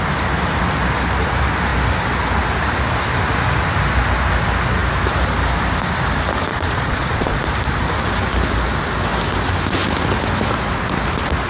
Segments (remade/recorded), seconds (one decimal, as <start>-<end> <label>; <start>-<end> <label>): 0.0-6.5 recorded; 6.5-7.4 remade; 7.4-11.5 recorded